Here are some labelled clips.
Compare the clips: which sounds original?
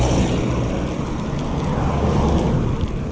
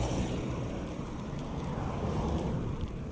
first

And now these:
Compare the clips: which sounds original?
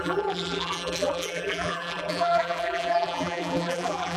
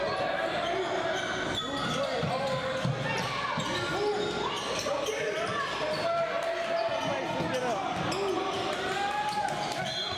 second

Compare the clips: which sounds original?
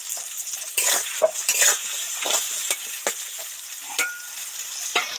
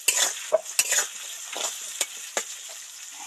second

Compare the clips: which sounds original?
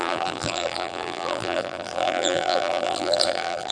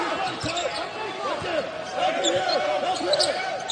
second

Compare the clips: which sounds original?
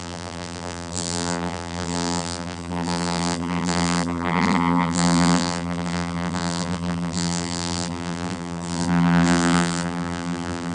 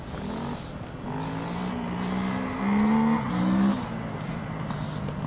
second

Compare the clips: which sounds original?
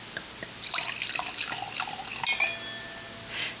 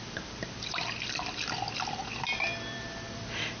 first